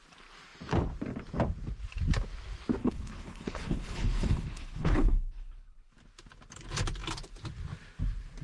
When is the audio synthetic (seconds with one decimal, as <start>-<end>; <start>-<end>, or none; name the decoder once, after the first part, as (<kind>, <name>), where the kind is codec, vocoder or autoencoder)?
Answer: 2.8-5.9 (codec, HILCodec)